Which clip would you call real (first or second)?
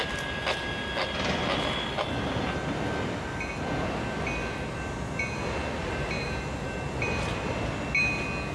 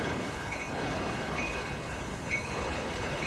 first